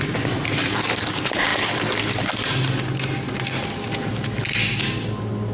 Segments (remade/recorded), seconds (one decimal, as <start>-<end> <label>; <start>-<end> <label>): 0.0-5.5 recorded